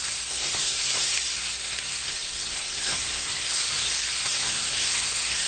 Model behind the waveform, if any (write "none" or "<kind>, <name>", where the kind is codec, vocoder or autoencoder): codec, SNAC